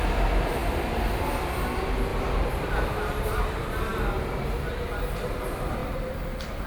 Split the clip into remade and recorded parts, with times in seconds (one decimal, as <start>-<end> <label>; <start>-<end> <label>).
0.0-2.1 recorded; 2.1-2.8 remade; 2.8-5.8 recorded; 5.8-6.7 remade